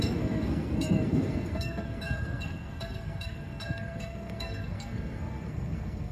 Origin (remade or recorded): remade